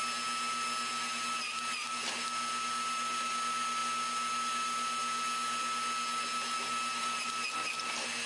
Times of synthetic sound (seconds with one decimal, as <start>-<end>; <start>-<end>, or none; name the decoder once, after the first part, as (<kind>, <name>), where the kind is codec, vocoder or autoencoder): none